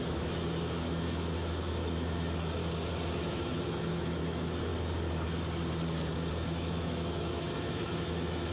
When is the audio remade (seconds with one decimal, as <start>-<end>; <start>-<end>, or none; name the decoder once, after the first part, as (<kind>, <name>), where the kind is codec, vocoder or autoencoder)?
0.0-2.6 (autoencoder, DAC-VAE); 3.3-4.7; 6.3-8.5